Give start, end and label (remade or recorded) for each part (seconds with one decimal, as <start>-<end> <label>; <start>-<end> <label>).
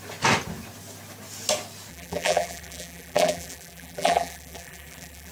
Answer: 0.0-1.9 recorded; 1.9-5.3 remade